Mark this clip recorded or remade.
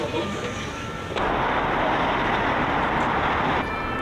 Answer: recorded